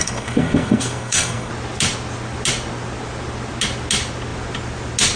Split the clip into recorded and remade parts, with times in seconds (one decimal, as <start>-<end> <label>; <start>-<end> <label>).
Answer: 0.0-1.5 remade; 1.5-5.2 recorded